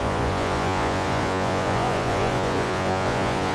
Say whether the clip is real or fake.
fake